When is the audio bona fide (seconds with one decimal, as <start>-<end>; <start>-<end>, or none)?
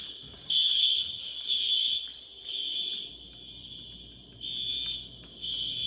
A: 1.8-4.7